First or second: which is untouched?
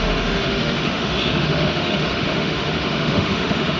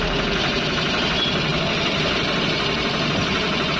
second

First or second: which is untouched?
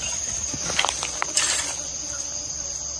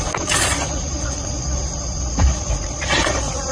first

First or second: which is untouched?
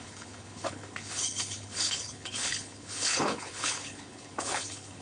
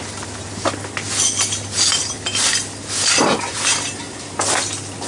second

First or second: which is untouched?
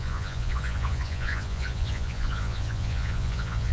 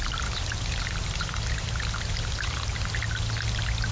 second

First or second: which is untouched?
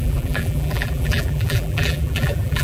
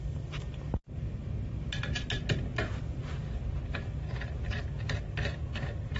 second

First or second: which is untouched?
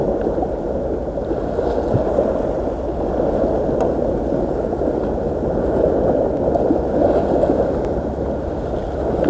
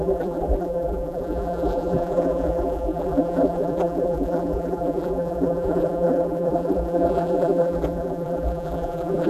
first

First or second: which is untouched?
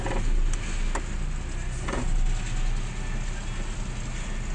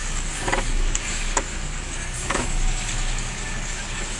first